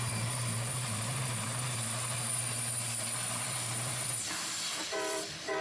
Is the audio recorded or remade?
remade